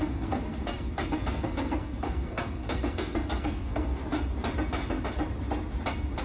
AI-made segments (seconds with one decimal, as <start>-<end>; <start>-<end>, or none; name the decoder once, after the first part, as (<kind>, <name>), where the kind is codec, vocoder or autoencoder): 0.0-4.0 (codec, SNAC)

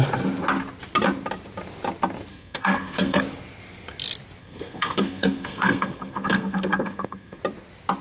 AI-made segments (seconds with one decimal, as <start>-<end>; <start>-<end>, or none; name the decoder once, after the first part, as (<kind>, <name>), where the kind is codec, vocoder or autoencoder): 2.3-3.2 (codec, SNAC); 4.4-7.4